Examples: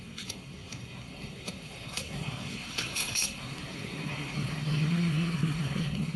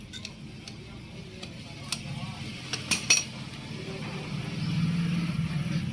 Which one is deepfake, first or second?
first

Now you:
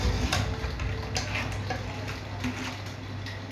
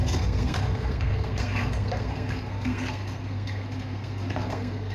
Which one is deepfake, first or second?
second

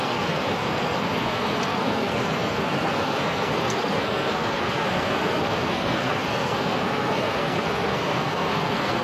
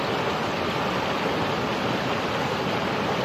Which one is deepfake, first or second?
first